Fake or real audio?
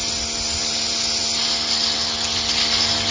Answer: real